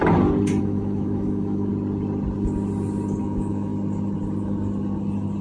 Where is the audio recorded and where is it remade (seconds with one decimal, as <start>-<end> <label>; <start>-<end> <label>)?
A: 0.0-0.6 recorded; 0.6-1.7 remade; 1.7-3.2 recorded; 3.2-3.7 remade; 3.7-5.4 recorded